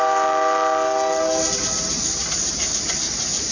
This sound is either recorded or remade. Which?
recorded